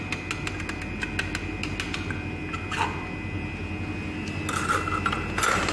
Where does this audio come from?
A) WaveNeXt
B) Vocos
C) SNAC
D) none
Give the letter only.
D